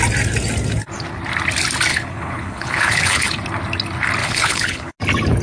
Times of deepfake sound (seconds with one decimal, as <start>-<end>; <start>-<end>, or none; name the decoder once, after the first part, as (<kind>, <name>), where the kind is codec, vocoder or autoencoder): 1.9-3.3 (codec, HILCodec); 4.2-4.9